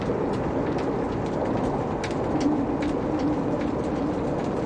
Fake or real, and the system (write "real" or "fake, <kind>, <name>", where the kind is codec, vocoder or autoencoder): real